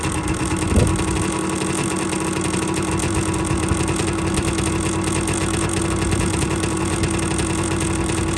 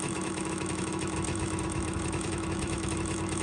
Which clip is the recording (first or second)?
first